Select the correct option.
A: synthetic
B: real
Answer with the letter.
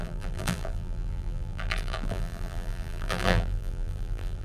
A